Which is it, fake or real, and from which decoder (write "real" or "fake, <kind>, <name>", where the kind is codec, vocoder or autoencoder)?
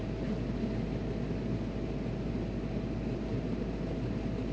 real